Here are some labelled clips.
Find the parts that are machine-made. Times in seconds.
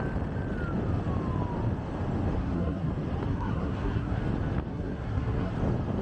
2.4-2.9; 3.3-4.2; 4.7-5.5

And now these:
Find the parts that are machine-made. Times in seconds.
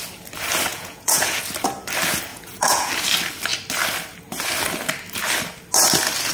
0.7-1.4; 2.3-2.9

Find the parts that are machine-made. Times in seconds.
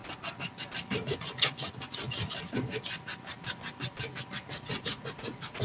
4.7-5.6